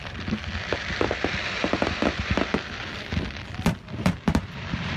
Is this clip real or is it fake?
fake